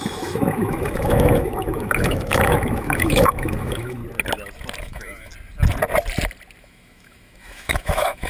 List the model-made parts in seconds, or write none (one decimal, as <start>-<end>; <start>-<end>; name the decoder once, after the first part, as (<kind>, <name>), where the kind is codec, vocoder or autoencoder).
0.0-4.0 (autoencoder, DAC-VAE); 4.8-5.3; 6.6-8.3